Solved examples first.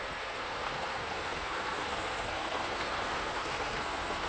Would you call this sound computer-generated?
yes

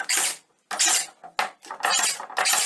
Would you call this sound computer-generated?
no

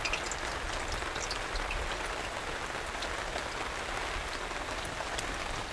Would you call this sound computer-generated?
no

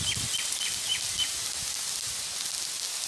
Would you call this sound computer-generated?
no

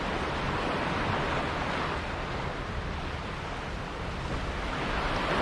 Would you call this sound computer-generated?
no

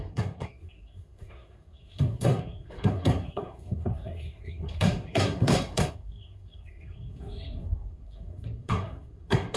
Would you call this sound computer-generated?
yes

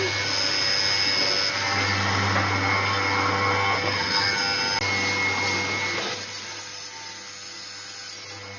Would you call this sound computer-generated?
no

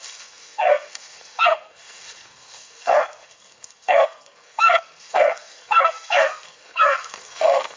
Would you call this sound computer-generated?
yes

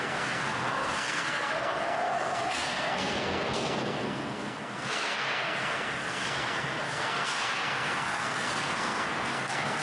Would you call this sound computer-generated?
yes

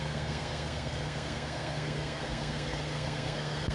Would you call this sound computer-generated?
yes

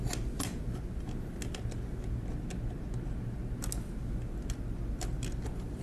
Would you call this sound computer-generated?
no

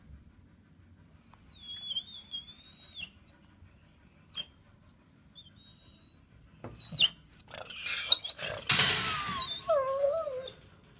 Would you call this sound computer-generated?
no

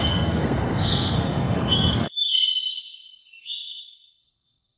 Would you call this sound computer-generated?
yes